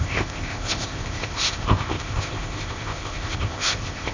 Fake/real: fake